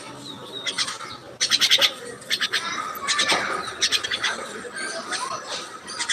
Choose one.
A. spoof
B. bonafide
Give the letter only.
B